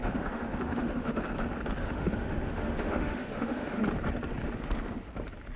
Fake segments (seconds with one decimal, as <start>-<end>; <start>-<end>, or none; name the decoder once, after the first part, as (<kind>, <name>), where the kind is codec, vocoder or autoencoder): 0.0-1.1 (autoencoder, DAC-VAE); 1.8-3.8